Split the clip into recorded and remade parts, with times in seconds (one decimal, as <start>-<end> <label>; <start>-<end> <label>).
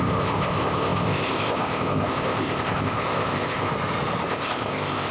0.0-3.7 remade; 3.7-4.3 recorded; 4.3-5.1 remade